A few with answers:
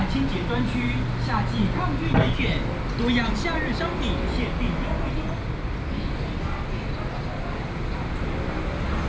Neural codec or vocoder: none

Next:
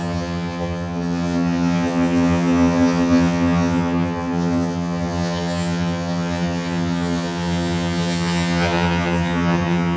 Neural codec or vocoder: vocoder, HiFi-GAN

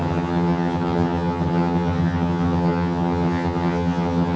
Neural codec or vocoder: vocoder, HiFi-GAN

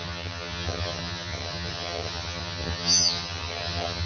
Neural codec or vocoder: vocoder, HiFi-GAN